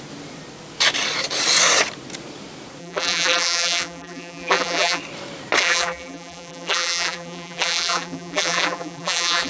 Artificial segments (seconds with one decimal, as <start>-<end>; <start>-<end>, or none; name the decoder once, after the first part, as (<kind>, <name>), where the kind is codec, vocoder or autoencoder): 2.8-5.0 (vocoder, BigVGAN v2); 5.6-9.5